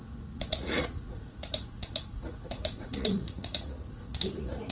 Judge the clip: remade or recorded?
remade